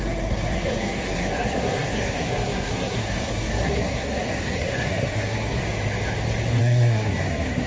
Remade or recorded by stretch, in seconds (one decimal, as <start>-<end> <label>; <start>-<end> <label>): 0.0-5.6 remade; 5.6-6.6 recorded; 6.6-7.7 remade